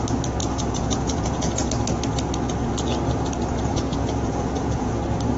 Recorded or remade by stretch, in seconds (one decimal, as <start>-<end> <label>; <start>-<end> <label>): 0.0-0.4 recorded; 0.4-1.7 remade; 1.7-3.7 recorded; 3.7-4.9 remade; 4.9-5.4 recorded